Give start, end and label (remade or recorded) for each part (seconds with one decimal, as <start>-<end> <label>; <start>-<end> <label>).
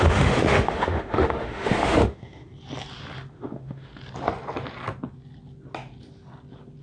0.0-2.5 remade; 2.5-3.3 recorded; 3.3-3.9 remade; 3.9-6.8 recorded